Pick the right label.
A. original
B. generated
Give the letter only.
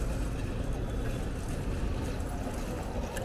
A